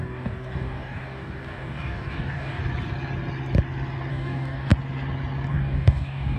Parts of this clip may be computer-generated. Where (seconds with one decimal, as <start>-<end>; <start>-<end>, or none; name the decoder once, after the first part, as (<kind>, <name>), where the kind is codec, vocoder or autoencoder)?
0.0-2.6 (codec, DAC); 4.1-4.7; 5.5-6.4